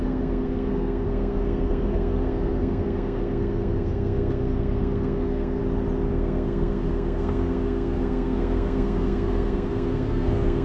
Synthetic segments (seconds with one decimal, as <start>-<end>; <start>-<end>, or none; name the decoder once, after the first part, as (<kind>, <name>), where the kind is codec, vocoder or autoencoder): 0.0-5.6 (codec, SNAC); 6.1-10.6